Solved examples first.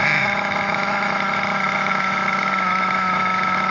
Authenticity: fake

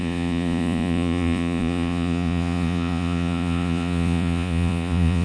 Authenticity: fake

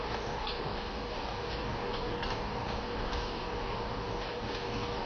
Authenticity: fake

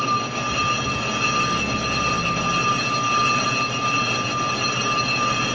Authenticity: real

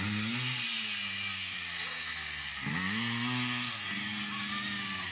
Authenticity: real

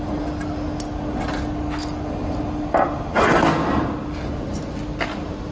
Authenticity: real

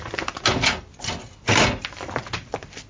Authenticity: real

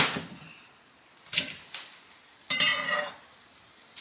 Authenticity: real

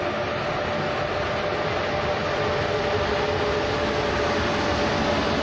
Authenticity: real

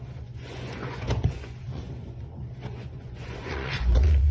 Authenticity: fake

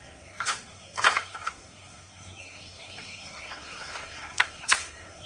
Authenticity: fake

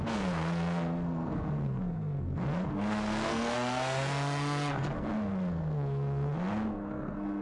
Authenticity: fake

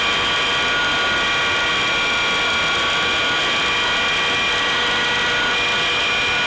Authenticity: real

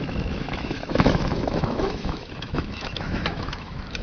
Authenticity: fake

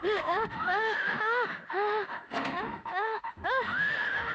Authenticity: fake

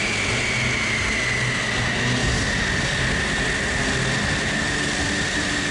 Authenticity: real